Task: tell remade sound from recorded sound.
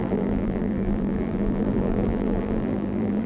remade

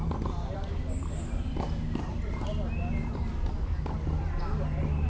recorded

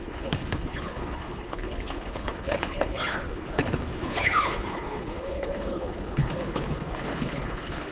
remade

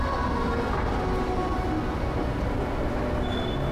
recorded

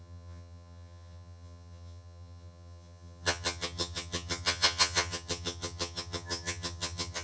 remade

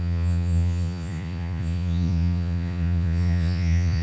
remade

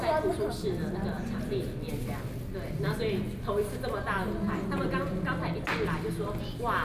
recorded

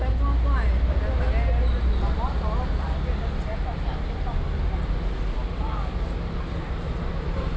recorded